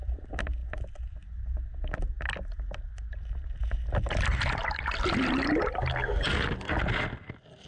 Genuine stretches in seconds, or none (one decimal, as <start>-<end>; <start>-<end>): 0.0-7.7